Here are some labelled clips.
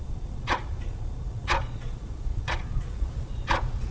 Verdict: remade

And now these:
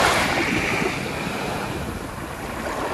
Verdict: recorded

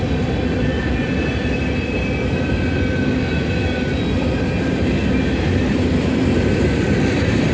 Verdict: recorded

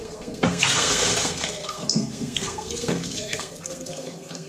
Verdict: remade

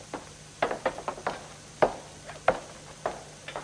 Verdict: recorded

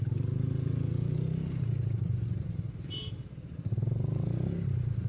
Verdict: remade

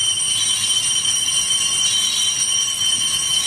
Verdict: recorded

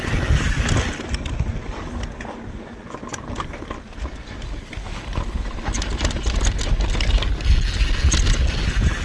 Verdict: recorded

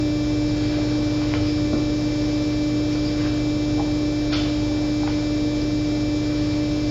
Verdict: recorded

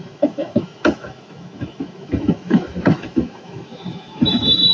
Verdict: remade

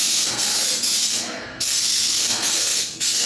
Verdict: remade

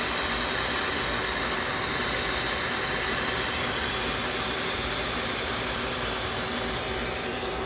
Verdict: recorded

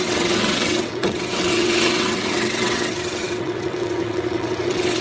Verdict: remade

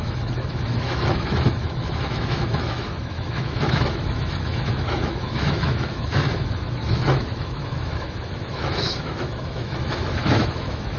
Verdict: remade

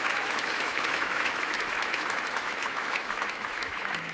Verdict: remade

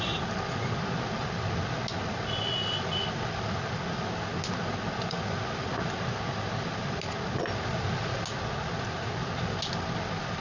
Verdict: recorded